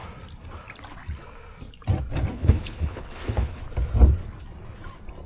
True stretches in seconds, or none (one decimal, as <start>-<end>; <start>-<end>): 0.0-2.3; 3.6-5.3